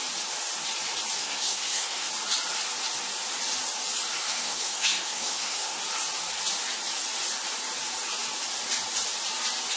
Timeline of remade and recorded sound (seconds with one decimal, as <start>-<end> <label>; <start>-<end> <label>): 0.0-1.2 recorded; 1.2-2.1 remade; 2.1-4.2 recorded; 4.2-5.8 remade; 5.8-9.8 recorded